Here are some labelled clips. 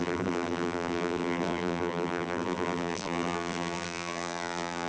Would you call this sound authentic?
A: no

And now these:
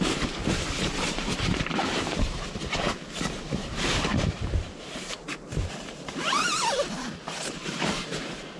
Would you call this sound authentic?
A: no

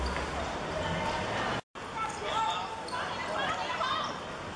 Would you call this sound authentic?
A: yes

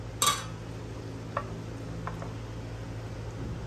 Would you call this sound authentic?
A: yes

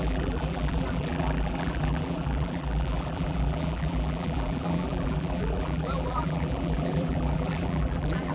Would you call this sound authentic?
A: no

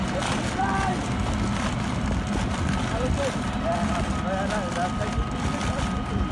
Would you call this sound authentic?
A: yes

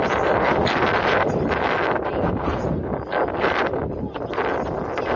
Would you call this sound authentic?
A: yes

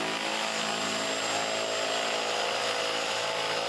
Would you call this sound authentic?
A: no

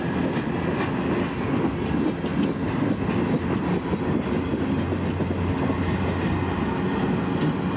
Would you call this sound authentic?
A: yes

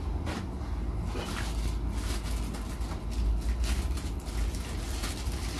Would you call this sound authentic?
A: yes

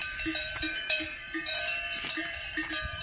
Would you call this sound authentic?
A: no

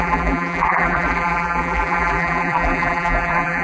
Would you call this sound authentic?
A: no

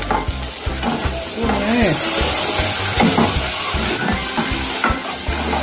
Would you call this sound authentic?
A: yes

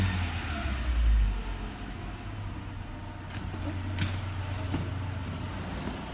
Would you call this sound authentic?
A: yes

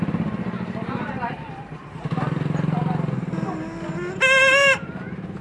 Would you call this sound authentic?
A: no